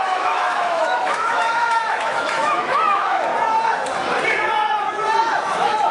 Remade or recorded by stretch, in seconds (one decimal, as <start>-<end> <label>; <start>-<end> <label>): 0.0-3.3 remade; 3.3-5.2 recorded; 5.2-5.9 remade